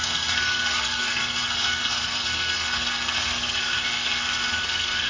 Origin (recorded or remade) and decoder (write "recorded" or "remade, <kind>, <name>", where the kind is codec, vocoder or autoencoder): remade, codec, SNAC